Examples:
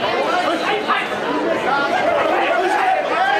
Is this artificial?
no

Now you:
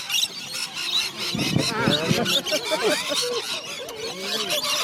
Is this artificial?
no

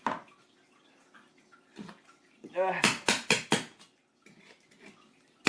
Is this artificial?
no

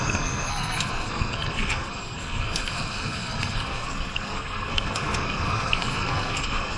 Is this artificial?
yes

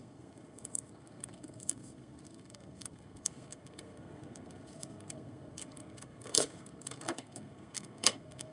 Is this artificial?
yes